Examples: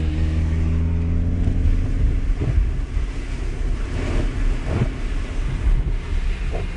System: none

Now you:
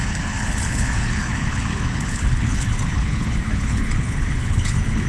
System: codec, HILCodec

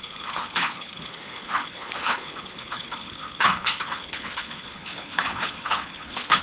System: codec, HILCodec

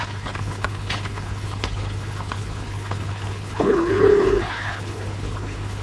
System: codec, HILCodec